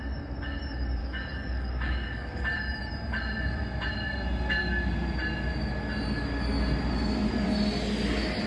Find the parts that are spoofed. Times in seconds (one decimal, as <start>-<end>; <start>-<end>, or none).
1.0-2.4